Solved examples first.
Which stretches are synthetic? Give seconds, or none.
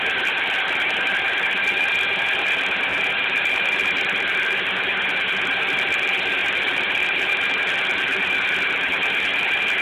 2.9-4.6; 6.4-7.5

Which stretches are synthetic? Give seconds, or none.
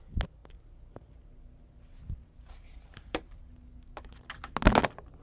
0.4-3.5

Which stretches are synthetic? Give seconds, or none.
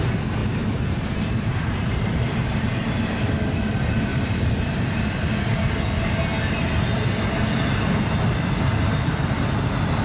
0.4-3.0; 4.1-5.0